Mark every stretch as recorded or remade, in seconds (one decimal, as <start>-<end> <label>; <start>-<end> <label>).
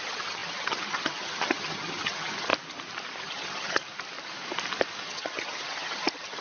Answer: 0.0-2.5 remade; 2.5-3.2 recorded; 3.2-3.8 remade; 3.8-5.0 recorded; 5.0-6.4 remade